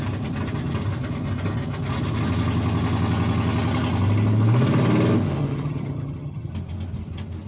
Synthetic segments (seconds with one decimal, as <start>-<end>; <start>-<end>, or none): 5.4-6.5